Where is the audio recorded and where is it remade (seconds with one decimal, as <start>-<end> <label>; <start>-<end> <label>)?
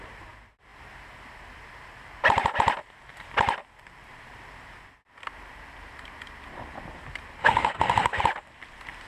0.0-7.4 recorded; 7.4-8.2 remade; 8.2-9.1 recorded